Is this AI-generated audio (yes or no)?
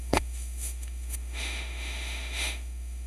yes